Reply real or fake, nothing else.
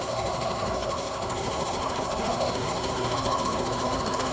fake